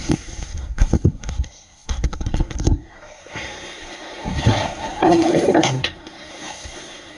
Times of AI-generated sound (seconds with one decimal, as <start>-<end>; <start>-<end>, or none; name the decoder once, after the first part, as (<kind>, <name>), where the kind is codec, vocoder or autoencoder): 0.0-7.2 (codec, SNAC)